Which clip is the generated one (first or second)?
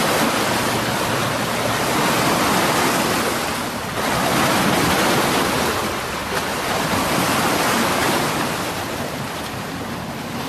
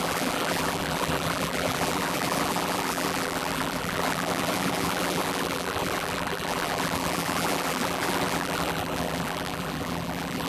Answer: second